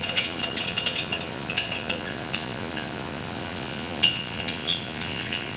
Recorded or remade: remade